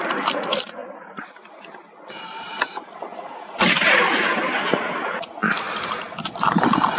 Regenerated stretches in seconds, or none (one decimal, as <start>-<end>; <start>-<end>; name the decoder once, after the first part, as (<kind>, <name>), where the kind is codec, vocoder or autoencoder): 0.8-3.8 (vocoder, BigVGAN v2)